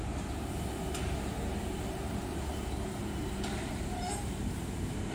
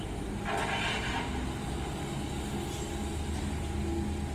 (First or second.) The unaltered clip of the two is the second